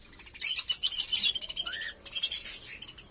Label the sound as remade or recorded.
recorded